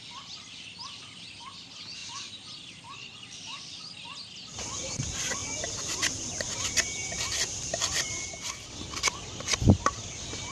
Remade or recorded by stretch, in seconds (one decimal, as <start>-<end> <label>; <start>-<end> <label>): 0.0-10.5 recorded